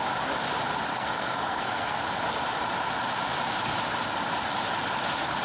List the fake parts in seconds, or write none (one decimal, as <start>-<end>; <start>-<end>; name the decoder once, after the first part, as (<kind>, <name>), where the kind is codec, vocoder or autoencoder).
0.9-2.0 (codec, SNAC)

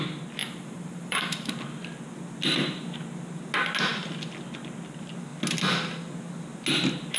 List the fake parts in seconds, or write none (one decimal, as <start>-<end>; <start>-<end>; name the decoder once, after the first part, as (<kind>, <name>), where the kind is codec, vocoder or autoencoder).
0.4-1.5 (vocoder, BigVGAN v2)

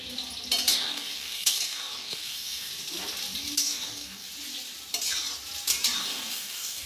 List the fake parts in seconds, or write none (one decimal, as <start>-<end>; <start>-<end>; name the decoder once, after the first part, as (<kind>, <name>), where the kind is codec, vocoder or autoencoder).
0.7-2.7 (codec, DAC); 3.6-4.3; 6.0-6.9

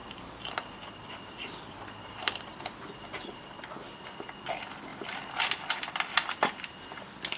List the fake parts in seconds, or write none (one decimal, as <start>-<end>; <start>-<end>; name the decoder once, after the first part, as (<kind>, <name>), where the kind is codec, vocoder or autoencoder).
0.0-2.4 (vocoder, BigVGAN v2)

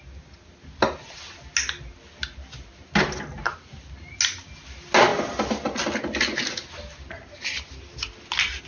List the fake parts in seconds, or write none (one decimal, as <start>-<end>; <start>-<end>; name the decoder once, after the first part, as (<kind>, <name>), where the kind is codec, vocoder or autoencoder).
none

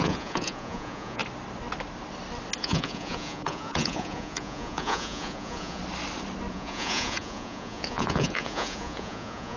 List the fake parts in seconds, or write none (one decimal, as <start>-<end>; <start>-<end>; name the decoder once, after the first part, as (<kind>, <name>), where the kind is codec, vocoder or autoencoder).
0.0-1.2 (vocoder, Vocos); 2.6-5.8; 6.5-9.6

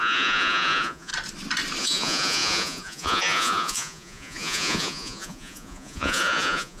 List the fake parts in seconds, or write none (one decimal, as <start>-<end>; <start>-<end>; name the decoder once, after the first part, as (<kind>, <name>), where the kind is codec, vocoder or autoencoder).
0.0-1.1 (vocoder, Vocos); 1.8-6.8